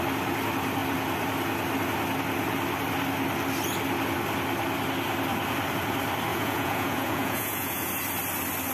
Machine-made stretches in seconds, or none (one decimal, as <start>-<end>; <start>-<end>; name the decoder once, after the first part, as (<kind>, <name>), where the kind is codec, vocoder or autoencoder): 6.3-7.9 (vocoder, Vocos)